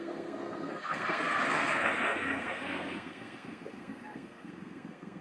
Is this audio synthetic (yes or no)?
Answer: yes